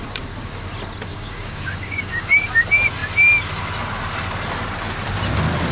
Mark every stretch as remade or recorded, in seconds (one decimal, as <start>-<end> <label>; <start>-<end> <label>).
0.0-1.1 recorded; 1.1-2.5 remade; 2.5-5.7 recorded